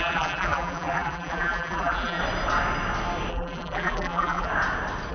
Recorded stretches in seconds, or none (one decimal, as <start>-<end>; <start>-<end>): 2.2-3.3; 4.5-5.1

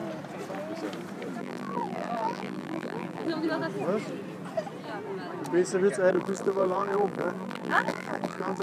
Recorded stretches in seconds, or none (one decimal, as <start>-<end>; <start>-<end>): 0.0-1.4; 3.3-6.1

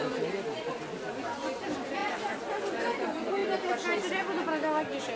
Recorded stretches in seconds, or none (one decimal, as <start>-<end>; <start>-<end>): 0.0-2.0; 2.6-3.4; 4.1-5.2

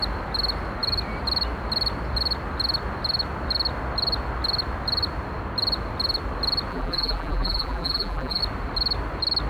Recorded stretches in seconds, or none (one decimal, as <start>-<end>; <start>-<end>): 0.0-6.7; 8.4-9.5

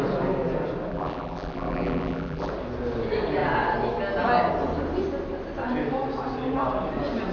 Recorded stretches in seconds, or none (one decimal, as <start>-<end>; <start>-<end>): 0.0-0.9; 2.5-7.3